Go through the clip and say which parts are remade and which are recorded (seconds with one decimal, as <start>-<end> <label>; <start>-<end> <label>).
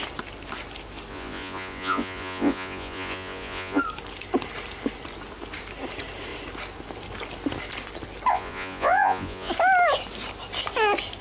0.0-1.1 recorded; 1.1-3.8 remade; 3.8-8.3 recorded; 8.3-9.5 remade; 9.5-11.2 recorded